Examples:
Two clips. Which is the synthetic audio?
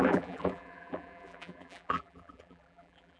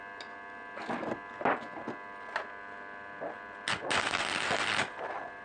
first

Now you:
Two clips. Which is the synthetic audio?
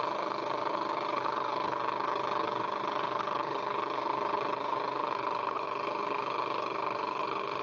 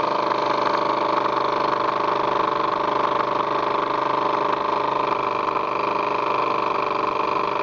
first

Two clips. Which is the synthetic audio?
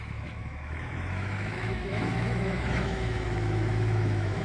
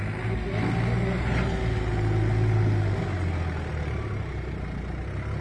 first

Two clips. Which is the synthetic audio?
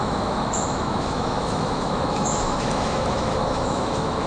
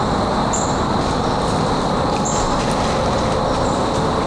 first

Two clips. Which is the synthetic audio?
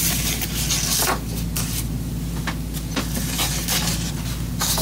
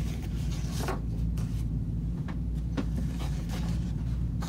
second